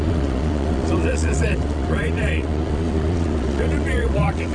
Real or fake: fake